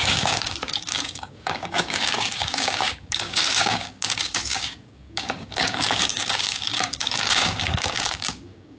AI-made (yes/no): yes